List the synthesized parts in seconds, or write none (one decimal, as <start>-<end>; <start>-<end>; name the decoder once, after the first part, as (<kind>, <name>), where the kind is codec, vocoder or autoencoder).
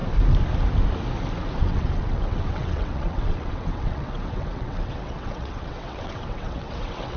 1.6-7.2 (vocoder, WaveNeXt)